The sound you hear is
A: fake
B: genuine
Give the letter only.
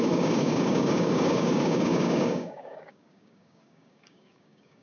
A